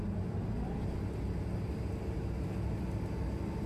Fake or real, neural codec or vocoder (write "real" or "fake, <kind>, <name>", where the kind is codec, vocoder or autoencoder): real